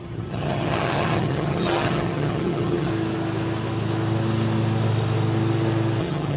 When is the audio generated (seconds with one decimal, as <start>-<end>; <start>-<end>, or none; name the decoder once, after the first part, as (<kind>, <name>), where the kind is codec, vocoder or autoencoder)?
0.0-2.9 (vocoder, HiFi-GAN); 6.0-6.4